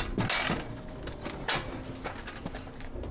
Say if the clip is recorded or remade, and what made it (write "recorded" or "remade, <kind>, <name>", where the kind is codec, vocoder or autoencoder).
recorded